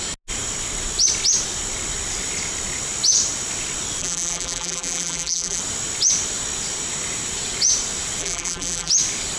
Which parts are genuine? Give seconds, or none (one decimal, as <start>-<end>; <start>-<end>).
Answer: 0.0-4.0; 5.6-8.2; 8.9-9.4